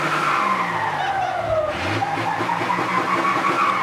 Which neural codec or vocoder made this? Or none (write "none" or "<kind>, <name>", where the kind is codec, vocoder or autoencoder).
none